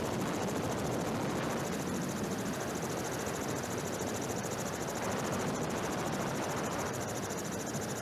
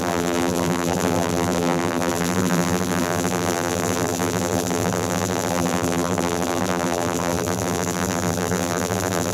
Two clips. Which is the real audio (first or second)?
first